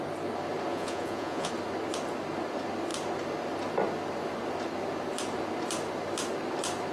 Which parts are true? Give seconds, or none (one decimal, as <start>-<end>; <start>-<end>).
0.0-0.7; 1.5-6.9

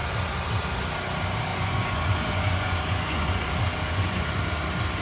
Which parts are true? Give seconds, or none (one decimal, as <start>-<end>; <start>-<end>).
0.0-1.5; 3.5-3.9; 4.4-5.0

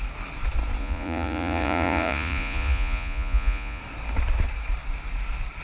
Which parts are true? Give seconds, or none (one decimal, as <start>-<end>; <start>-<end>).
0.0-0.8; 3.8-5.6

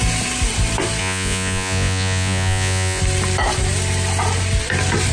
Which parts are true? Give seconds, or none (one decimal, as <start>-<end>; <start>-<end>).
0.0-1.0; 3.0-5.1

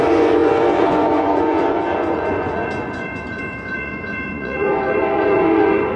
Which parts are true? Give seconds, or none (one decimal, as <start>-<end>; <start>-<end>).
none

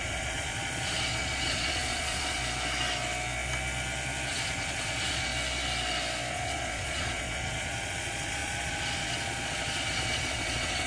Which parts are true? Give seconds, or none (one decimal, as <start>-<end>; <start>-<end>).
2.4-4.3; 5.3-6.3